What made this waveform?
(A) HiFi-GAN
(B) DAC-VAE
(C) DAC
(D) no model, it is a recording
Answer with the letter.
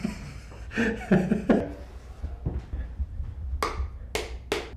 D